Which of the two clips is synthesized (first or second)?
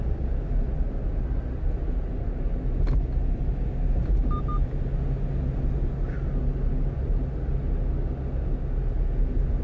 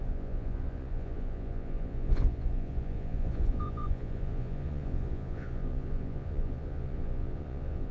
second